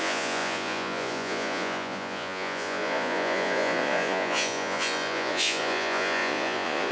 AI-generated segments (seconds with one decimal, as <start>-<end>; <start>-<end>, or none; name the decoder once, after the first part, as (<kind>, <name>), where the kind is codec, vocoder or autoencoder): 0.0-6.9 (vocoder, Vocos)